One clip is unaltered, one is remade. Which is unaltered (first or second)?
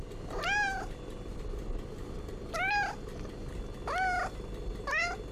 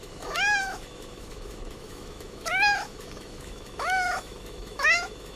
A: first